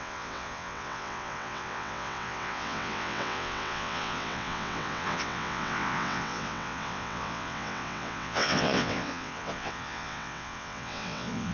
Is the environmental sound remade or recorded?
remade